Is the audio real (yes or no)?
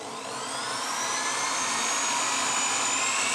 yes